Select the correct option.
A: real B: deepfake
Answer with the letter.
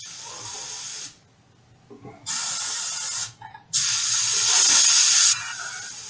A